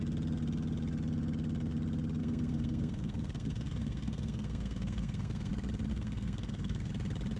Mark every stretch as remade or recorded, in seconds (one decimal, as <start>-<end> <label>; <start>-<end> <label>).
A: 0.0-2.2 recorded; 2.2-5.5 remade; 5.5-5.9 recorded; 5.9-6.9 remade; 6.9-7.4 recorded